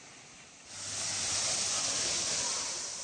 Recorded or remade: recorded